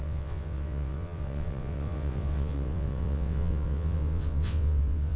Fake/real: fake